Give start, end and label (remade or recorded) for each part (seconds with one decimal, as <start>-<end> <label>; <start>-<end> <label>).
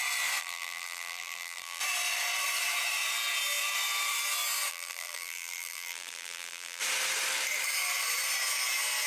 0.0-0.4 recorded; 0.4-1.8 remade; 1.8-4.7 recorded; 4.7-6.8 remade; 6.8-9.1 recorded